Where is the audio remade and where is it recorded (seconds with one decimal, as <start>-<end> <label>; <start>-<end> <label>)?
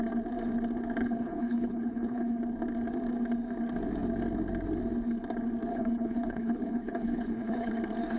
0.0-1.0 recorded; 1.0-2.4 remade; 2.4-5.7 recorded; 5.7-7.7 remade; 7.7-8.2 recorded